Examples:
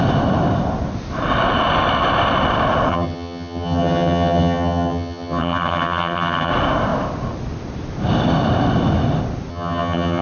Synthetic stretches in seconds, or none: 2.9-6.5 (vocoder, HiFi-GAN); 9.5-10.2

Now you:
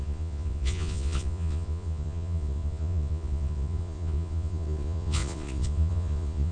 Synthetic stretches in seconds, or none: 0.0-6.5 (vocoder, Vocos)